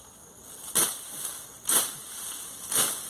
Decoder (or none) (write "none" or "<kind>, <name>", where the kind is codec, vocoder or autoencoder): none